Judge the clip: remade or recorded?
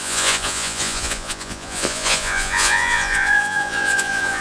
remade